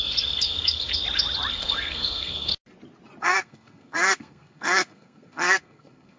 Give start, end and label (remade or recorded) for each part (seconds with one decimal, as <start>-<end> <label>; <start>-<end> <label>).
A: 0.0-0.9 remade; 0.9-1.5 recorded; 1.5-2.5 remade; 2.5-3.2 recorded; 3.2-6.2 remade